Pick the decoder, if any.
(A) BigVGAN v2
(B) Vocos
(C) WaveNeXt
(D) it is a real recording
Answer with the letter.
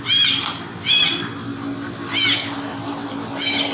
D